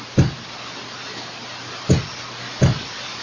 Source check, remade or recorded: recorded